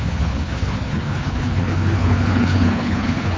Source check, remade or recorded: remade